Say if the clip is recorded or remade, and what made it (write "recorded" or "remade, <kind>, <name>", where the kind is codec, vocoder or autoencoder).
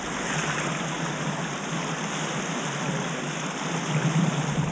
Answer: recorded